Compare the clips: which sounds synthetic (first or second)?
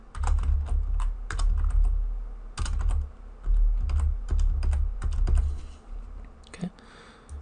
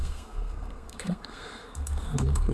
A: second